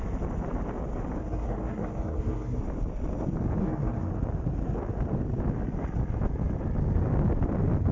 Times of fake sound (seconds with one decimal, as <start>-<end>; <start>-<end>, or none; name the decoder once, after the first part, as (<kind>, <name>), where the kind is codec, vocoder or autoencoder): 1.2-2.6 (codec, SNAC); 3.6-4.1